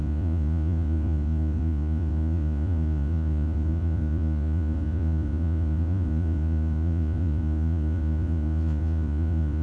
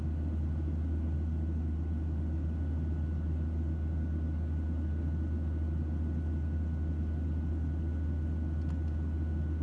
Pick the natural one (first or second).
second